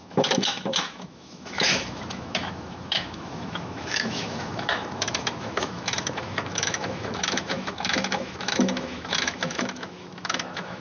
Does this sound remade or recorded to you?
remade